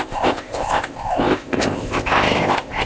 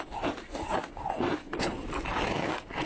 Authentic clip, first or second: second